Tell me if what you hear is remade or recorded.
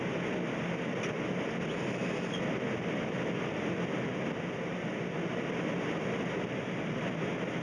recorded